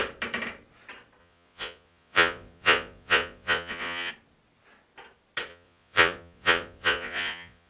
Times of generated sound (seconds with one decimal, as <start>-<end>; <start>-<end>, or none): 1.2-4.1; 5.5-7.7

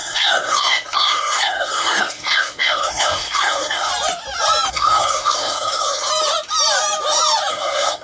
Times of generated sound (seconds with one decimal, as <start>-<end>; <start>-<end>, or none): 0.0-3.9; 4.7-6.1; 7.5-8.0

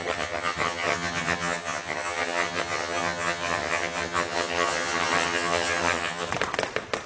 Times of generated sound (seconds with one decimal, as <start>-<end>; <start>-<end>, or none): 0.0-6.3

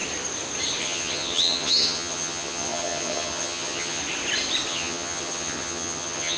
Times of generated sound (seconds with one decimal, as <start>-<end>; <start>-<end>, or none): 0.8-4.0; 4.7-6.4

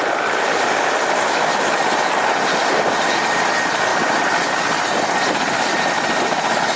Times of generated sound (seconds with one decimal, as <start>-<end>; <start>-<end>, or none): 3.9-6.2

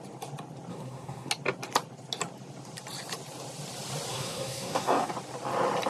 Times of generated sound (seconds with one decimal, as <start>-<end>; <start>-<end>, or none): 0.7-1.3; 4.1-5.1

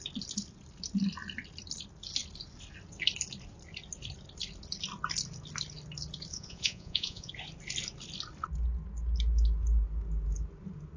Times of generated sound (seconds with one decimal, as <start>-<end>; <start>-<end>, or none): 6.3-7.3